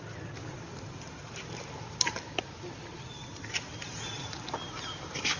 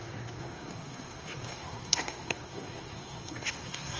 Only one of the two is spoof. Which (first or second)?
second